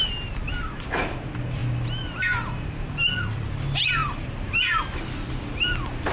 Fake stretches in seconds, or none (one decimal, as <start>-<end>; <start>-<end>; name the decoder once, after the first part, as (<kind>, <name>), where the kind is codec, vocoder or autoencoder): 0.0-1.6 (vocoder, BigVGAN v2); 3.3-4.0; 4.8-6.1